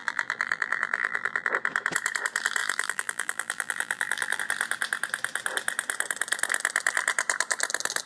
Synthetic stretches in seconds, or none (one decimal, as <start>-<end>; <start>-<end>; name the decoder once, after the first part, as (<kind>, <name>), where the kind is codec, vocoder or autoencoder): 0.0-1.5 (vocoder, BigVGAN v2); 2.6-4.4